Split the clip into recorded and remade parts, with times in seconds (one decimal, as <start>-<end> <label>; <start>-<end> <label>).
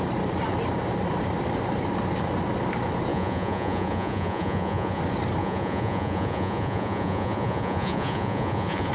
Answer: 0.0-3.1 recorded; 3.1-5.0 remade; 5.0-5.4 recorded; 5.4-8.9 remade